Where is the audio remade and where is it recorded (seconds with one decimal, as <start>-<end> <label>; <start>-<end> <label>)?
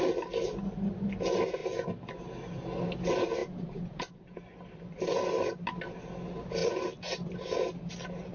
0.0-3.4 recorded; 3.4-4.4 remade; 4.4-8.3 recorded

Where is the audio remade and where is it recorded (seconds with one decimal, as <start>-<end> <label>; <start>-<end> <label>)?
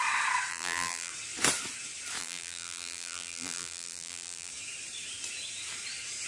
0.0-0.5 recorded; 0.5-1.1 remade; 1.1-2.2 recorded; 2.2-4.5 remade; 4.5-6.3 recorded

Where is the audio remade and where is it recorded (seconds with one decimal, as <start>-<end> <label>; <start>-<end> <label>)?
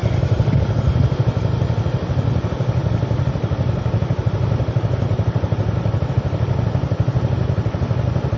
0.0-0.6 remade; 0.6-2.8 recorded; 2.8-6.1 remade; 6.1-8.4 recorded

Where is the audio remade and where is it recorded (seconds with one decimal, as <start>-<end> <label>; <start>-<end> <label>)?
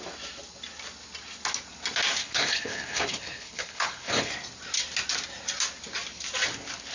0.0-2.2 recorded; 2.2-4.3 remade; 4.3-6.9 recorded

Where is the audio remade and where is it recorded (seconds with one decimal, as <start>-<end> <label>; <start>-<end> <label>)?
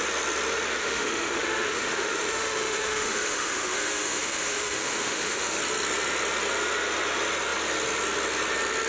0.0-0.8 recorded; 0.8-5.6 remade; 5.6-8.9 recorded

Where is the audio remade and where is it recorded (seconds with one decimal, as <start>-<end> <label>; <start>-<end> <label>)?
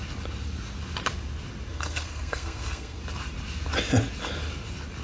0.0-1.7 recorded; 1.7-3.0 remade; 3.0-5.0 recorded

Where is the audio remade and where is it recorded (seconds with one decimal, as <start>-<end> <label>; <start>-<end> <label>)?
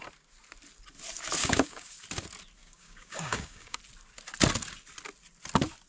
0.0-1.4 recorded; 1.4-2.0 remade; 2.0-2.6 recorded; 2.6-3.8 remade; 3.8-5.9 recorded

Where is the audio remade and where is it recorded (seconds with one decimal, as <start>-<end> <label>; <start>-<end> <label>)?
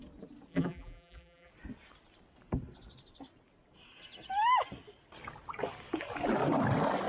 0.0-0.5 recorded; 0.5-1.5 remade; 1.5-7.1 recorded